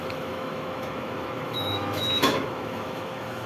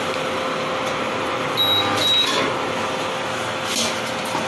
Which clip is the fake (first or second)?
first